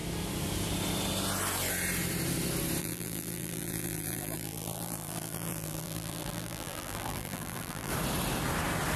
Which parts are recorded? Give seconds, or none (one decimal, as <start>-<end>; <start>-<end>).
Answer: 0.0-2.8; 7.9-9.0